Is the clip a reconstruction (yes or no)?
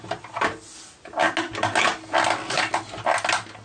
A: no